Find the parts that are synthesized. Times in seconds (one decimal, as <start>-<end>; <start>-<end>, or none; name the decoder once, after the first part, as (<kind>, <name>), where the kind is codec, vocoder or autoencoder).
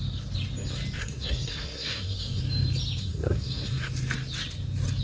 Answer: 1.0-2.4 (codec, SNAC); 3.0-3.9